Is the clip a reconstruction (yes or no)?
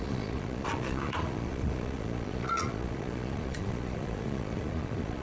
yes